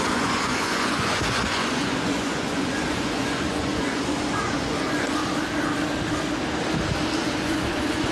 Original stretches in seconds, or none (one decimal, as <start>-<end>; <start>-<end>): 5.2-7.4